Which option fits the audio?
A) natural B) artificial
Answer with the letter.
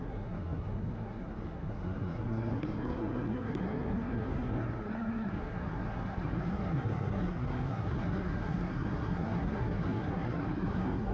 B